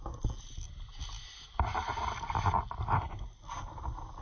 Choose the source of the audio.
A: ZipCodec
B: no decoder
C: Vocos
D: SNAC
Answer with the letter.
B